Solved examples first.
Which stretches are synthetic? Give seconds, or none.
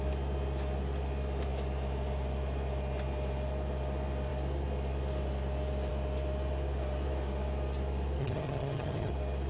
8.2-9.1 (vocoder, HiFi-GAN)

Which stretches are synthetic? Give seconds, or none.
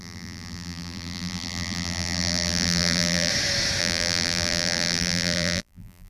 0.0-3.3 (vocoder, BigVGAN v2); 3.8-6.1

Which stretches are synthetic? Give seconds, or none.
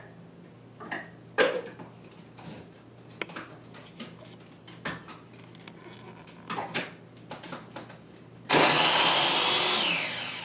none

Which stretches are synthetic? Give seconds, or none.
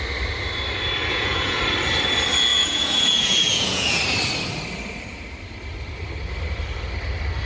1.1-1.6 (vocoder, Vocos); 2.5-4.0